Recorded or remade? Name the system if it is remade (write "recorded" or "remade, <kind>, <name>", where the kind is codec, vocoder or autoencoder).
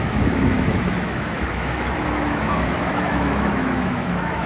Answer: remade, autoencoder, DAC-VAE